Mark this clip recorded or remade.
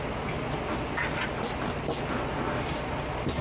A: remade